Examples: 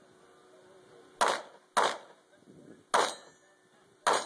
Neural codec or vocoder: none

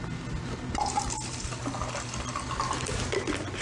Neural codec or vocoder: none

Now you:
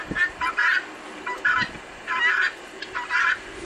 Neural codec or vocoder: none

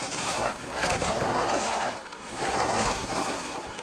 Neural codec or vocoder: codec, SNAC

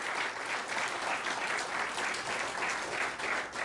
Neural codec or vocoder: none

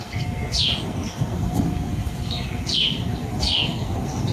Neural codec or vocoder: codec, SNAC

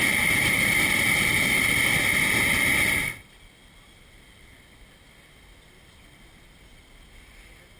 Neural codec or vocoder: none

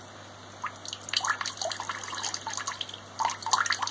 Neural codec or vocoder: none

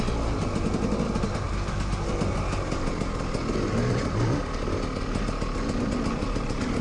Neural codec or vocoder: none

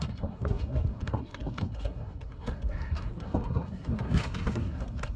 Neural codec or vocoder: codec, SNAC